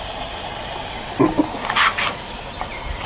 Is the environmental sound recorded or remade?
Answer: recorded